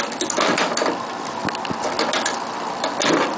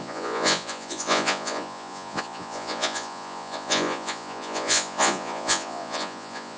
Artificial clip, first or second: second